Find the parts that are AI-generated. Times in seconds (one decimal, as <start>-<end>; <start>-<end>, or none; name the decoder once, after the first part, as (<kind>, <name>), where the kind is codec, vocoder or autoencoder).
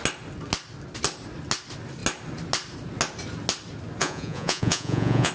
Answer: 4.0-5.3 (vocoder, Vocos)